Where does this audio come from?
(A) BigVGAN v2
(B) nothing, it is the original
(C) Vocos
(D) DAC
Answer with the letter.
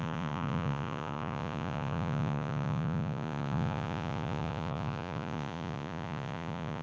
C